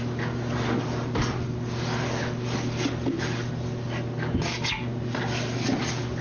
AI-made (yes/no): no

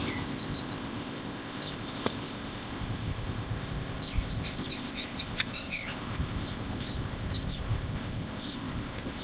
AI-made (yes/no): yes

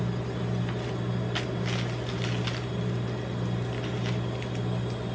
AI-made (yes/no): no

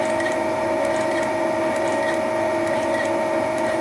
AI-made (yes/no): no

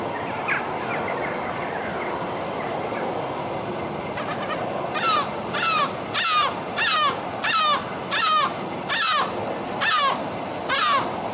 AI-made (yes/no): no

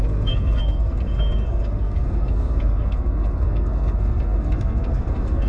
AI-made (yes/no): yes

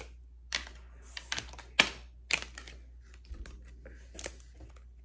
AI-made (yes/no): no